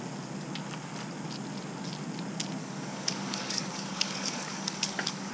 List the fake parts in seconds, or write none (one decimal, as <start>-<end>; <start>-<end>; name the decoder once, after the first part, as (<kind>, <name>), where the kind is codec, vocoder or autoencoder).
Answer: 2.6-5.3 (codec, DAC)